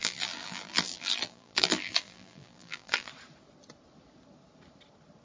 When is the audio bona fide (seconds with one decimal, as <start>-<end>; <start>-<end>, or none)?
3.1-5.2